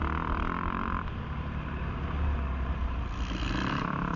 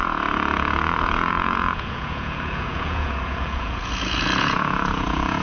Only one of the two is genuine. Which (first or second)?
first